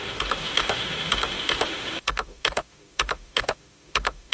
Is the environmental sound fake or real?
fake